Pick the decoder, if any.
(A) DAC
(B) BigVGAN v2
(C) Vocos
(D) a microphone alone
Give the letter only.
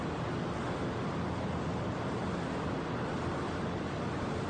D